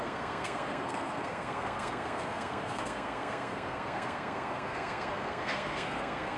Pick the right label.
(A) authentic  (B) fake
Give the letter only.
B